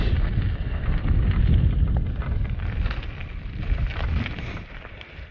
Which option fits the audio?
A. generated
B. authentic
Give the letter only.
B